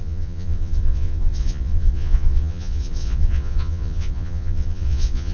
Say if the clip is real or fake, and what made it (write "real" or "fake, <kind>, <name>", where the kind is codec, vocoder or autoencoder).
fake, vocoder, Vocos